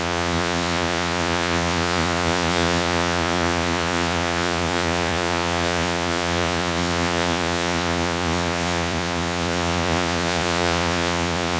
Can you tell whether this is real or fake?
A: fake